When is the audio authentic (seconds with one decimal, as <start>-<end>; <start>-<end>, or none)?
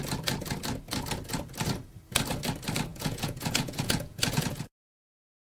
0.0-2.9; 4.6-5.5